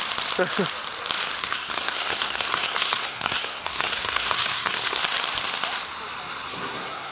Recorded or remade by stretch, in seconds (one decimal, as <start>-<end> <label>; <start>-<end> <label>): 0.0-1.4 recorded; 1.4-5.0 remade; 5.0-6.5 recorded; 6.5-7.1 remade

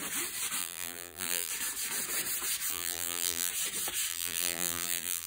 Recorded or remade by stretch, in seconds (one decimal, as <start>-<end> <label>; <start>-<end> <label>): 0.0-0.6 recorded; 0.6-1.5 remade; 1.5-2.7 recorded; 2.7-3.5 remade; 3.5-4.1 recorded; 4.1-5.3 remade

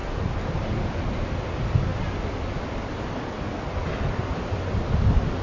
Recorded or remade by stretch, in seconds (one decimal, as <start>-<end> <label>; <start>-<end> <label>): 0.0-5.4 recorded

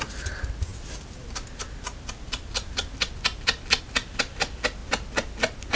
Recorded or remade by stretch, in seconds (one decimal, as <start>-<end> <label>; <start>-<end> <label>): 0.0-5.8 recorded